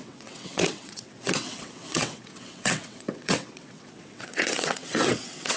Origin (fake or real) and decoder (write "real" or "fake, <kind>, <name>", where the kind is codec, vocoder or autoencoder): fake, vocoder, WaveNeXt